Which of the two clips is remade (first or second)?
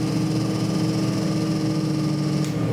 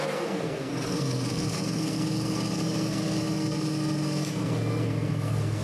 second